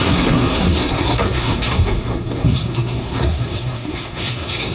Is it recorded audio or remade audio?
remade